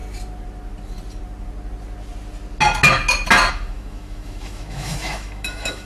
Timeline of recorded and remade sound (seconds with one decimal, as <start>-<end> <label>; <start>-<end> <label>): 0.0-3.5 recorded; 3.5-5.9 remade